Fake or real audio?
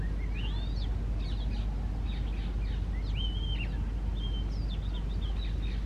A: real